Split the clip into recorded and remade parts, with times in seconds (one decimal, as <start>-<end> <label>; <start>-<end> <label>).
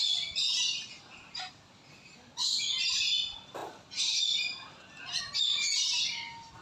0.0-6.6 recorded